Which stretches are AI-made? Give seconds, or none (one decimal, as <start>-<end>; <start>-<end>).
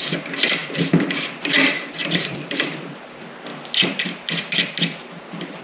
0.6-2.8